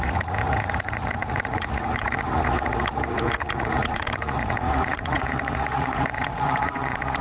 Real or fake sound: fake